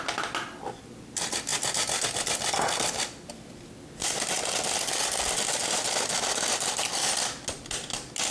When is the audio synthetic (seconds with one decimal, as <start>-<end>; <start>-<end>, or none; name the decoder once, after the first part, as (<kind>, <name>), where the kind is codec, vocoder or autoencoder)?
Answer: none